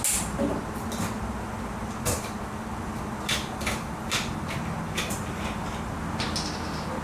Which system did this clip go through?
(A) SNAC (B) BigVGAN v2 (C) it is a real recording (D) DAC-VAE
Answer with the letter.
C